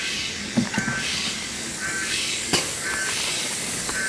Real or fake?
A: fake